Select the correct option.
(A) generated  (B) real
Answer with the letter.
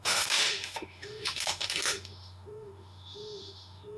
A